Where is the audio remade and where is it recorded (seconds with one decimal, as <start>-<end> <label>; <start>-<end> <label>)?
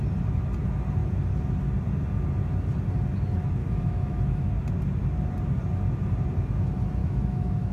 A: 0.0-3.6 recorded; 3.6-4.5 remade; 4.5-7.0 recorded; 7.0-7.7 remade